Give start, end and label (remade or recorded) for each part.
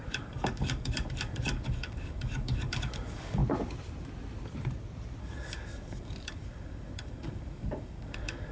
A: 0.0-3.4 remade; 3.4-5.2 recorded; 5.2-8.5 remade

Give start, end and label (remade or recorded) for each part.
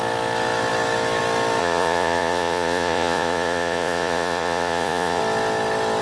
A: 0.0-1.6 recorded; 1.6-5.2 remade; 5.2-6.0 recorded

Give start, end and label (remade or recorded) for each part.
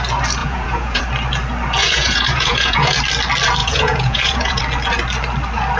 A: 0.0-0.4 recorded; 0.4-1.0 remade; 1.0-1.8 recorded; 1.8-3.0 remade; 3.0-3.6 recorded; 3.6-4.6 remade; 4.6-5.8 recorded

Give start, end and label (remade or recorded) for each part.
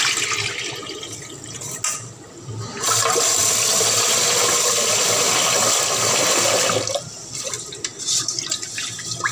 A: 0.0-9.3 recorded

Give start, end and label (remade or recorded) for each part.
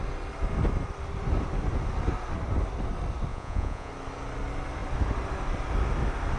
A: 0.0-3.3 recorded; 3.3-3.9 remade; 3.9-6.4 recorded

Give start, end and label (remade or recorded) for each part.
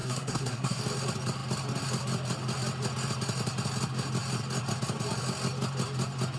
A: 0.0-0.8 remade; 0.8-6.4 recorded